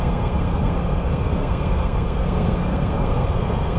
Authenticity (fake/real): fake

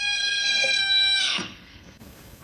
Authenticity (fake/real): fake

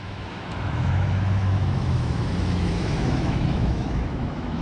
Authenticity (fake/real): fake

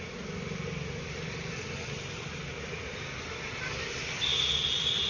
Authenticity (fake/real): real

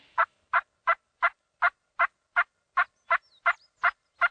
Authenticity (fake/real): real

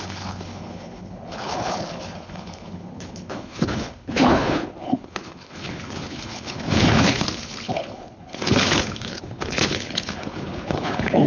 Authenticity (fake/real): fake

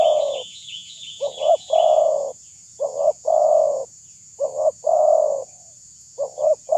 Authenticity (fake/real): fake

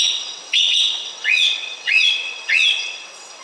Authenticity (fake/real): fake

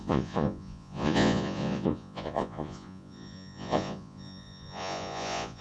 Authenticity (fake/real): fake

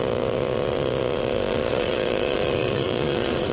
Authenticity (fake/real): fake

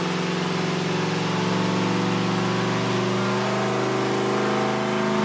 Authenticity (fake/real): real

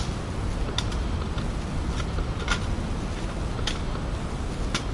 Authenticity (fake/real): real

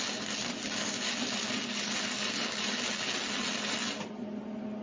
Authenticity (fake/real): real